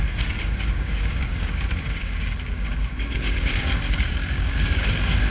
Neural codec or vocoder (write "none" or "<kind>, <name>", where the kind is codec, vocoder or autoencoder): codec, DAC